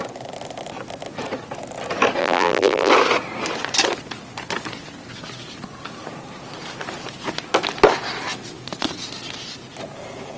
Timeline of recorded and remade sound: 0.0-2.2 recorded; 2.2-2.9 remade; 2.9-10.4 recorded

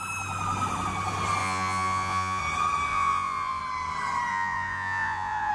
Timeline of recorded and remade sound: 0.0-1.4 recorded; 1.4-2.4 remade; 2.4-2.9 recorded; 2.9-3.6 remade; 3.6-4.3 recorded; 4.3-5.5 remade

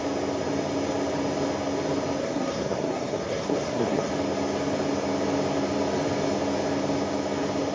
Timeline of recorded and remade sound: 0.0-2.2 recorded; 2.2-4.1 remade; 4.1-7.7 recorded

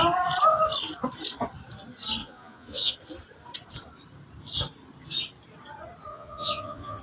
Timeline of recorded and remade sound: 0.0-2.2 recorded; 2.2-2.9 remade; 2.9-6.1 recorded; 6.1-7.0 remade

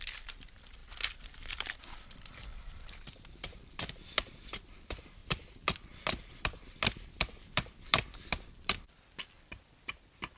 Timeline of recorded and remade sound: 0.0-5.2 remade; 5.2-6.2 recorded; 6.2-10.4 remade

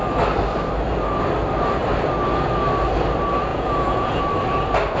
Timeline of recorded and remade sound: 0.0-3.5 recorded; 3.5-4.2 remade; 4.2-5.0 recorded